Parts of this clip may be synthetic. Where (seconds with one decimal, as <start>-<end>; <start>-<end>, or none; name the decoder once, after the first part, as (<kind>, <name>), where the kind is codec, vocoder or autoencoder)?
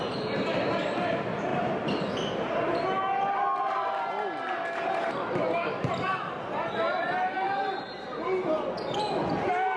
none